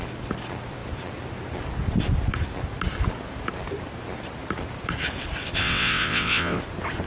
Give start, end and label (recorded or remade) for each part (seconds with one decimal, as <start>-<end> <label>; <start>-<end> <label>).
0.0-5.6 recorded; 5.6-6.6 remade; 6.6-7.1 recorded